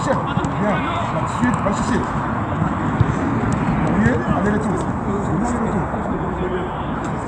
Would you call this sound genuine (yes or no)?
yes